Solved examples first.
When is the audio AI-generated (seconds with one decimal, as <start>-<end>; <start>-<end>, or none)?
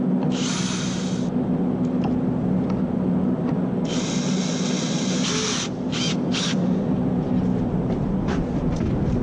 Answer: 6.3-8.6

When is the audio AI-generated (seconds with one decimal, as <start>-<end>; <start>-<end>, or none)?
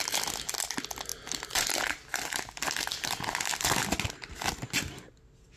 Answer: none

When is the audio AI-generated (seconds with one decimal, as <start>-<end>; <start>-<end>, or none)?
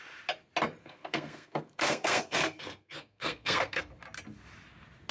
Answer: 0.8-3.9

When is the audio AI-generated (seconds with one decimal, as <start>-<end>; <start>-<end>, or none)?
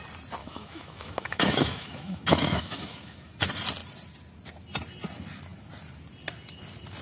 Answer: 0.4-3.3